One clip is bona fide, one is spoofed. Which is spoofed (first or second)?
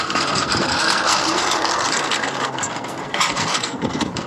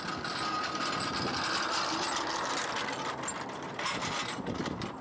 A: first